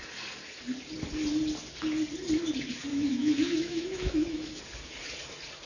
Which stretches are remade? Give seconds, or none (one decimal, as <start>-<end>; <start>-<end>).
2.9-4.6

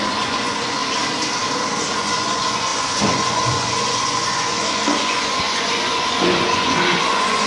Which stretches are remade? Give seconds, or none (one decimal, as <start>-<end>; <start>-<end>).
0.0-0.8; 1.9-7.5